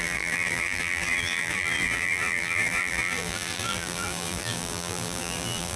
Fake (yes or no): yes